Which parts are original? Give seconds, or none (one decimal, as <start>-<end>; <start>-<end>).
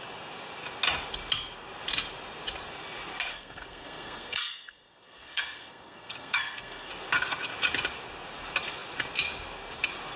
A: 0.0-3.3; 6.9-10.2